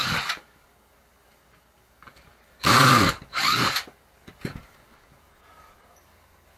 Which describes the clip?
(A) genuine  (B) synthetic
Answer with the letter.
B